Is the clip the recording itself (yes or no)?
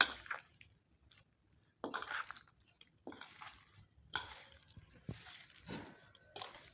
yes